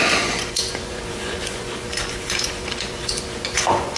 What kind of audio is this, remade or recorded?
remade